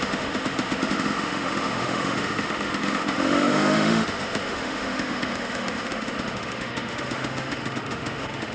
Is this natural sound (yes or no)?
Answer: no